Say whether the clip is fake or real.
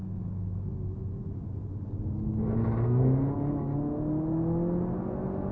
real